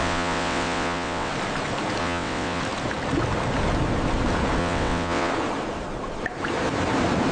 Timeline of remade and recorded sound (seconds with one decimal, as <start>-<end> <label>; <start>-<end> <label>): 0.0-1.3 remade; 1.3-2.0 recorded; 2.0-2.6 remade; 2.6-4.6 recorded; 4.6-5.3 remade; 5.3-7.3 recorded